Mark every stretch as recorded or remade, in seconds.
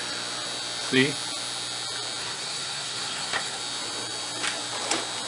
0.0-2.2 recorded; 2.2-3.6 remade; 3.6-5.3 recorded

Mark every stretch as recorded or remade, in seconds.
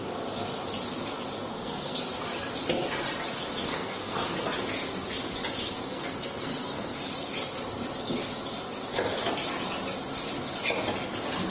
0.0-1.5 recorded; 1.5-2.1 remade; 2.1-3.7 recorded; 3.7-4.3 remade; 4.3-5.9 recorded; 5.9-7.1 remade; 7.1-11.5 recorded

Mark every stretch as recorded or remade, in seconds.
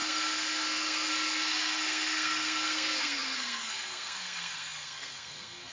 0.0-5.7 remade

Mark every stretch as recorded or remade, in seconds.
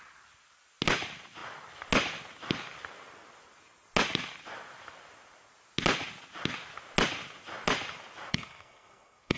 0.0-8.3 recorded; 8.3-9.4 remade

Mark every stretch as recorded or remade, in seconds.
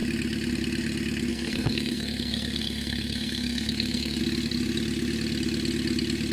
0.0-1.3 recorded; 1.3-4.2 remade; 4.2-6.3 recorded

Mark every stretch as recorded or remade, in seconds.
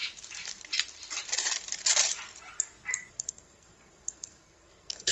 0.0-3.1 recorded; 3.1-5.1 remade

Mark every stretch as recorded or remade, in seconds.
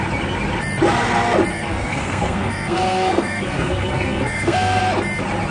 0.0-1.5 recorded; 1.5-4.8 remade; 4.8-5.5 recorded